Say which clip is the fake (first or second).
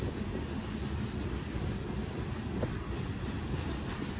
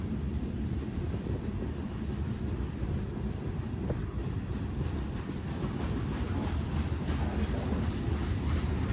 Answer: second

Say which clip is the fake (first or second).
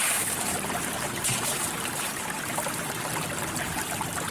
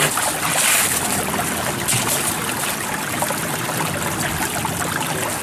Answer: first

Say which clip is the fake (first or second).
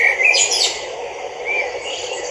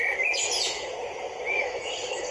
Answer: second